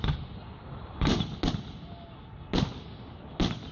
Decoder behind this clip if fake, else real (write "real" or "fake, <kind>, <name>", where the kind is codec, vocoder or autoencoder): real